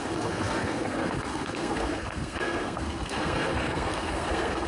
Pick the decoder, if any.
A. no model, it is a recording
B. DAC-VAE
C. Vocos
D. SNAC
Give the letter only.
D